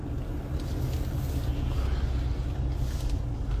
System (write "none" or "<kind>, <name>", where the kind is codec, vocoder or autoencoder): none